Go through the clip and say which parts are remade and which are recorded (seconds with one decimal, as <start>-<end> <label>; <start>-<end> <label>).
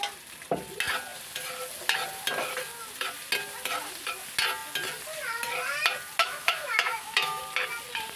0.0-6.2 recorded; 6.2-7.4 remade; 7.4-8.2 recorded